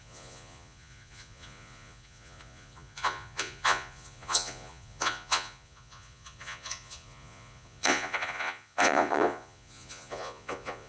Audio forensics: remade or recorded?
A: remade